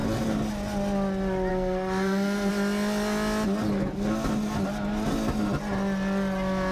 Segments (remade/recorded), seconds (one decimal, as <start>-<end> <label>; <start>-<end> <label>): 0.0-1.5 recorded; 1.5-2.5 remade; 2.5-6.7 recorded